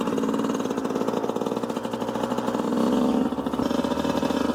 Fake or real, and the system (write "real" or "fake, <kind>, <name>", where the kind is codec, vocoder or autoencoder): real